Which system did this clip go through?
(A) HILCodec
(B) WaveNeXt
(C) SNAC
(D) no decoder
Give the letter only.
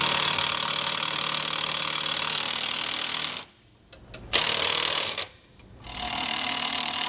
D